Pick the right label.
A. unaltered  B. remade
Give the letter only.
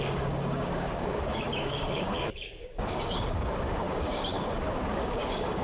B